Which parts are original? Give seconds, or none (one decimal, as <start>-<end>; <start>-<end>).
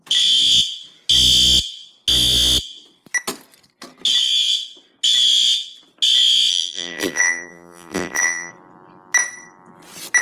0.0-6.5; 8.5-10.2